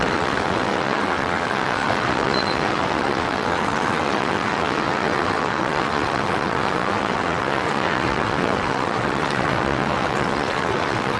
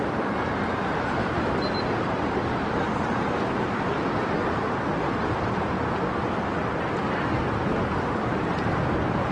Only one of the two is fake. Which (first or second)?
first